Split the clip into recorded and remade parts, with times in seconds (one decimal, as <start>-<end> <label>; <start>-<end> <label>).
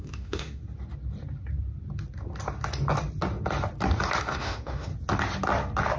0.0-0.6 remade; 0.6-4.2 recorded; 4.2-4.9 remade; 4.9-6.0 recorded